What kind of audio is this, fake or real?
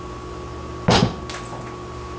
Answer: real